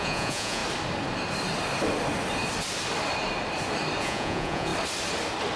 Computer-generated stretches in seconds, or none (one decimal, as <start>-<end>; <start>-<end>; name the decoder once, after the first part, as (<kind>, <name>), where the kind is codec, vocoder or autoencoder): 0.0-0.6 (vocoder, Vocos); 4.0-4.7